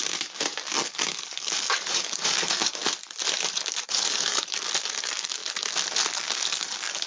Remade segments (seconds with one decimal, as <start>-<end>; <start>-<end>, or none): 0.0-2.8; 3.3-5.4; 6.1-7.1